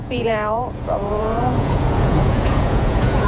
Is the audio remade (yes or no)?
yes